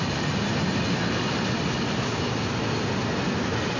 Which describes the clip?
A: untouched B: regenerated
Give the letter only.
A